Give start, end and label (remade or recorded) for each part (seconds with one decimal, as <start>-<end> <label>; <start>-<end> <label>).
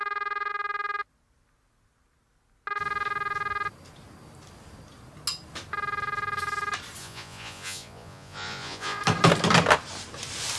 0.0-7.0 recorded; 7.0-9.0 remade; 9.0-10.6 recorded